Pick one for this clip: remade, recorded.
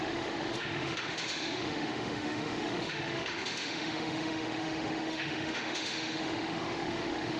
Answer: remade